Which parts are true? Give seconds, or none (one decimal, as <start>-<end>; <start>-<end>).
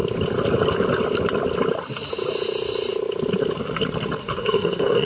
0.0-4.2